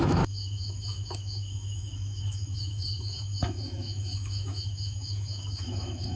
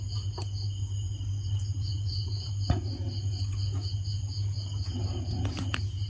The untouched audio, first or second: second